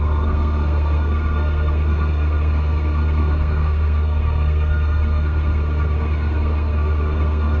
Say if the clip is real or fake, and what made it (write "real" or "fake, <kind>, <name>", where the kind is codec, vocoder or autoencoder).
fake, codec, SNAC